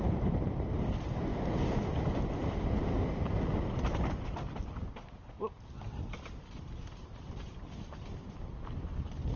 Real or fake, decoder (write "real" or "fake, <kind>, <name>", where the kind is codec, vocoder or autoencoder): real